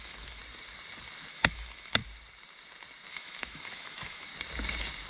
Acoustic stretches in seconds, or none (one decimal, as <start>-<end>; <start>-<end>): 0.4-1.3; 2.0-3.1; 4.3-5.1